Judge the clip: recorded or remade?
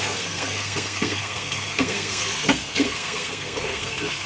remade